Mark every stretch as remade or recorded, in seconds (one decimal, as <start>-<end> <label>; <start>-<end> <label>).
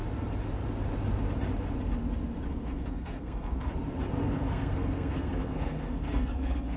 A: 0.0-2.5 recorded; 2.5-3.7 remade; 3.7-4.2 recorded; 4.2-6.8 remade